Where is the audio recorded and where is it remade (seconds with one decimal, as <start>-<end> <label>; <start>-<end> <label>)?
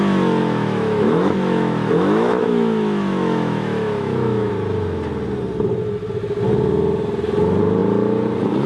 0.0-0.4 recorded; 0.4-4.5 remade; 4.5-8.7 recorded